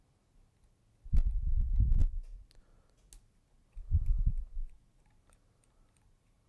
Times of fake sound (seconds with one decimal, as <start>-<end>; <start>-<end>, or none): 2.0-2.6; 3.8-4.3